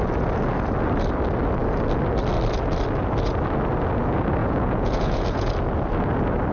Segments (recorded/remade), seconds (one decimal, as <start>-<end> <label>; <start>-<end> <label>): 0.0-4.4 recorded; 4.4-5.5 remade; 5.5-6.5 recorded